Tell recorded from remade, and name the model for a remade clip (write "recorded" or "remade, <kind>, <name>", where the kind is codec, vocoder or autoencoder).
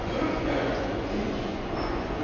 remade, vocoder, Vocos